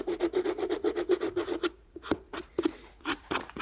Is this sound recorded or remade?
remade